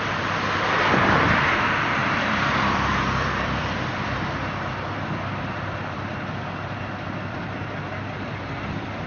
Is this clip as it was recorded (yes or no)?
no